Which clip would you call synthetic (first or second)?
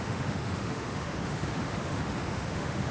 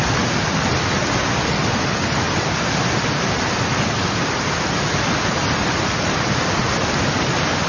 first